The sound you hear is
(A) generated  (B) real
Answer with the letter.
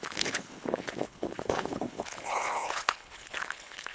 A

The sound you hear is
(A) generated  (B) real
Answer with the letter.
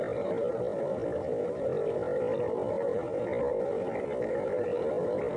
B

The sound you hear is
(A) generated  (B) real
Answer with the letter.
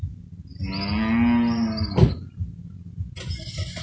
B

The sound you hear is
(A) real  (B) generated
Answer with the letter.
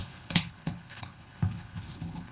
B